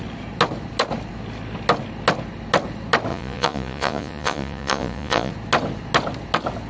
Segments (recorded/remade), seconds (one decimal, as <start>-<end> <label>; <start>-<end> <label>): 0.0-3.1 recorded; 3.1-5.3 remade; 5.3-6.7 recorded